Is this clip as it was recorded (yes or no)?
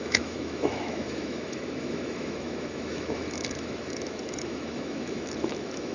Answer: no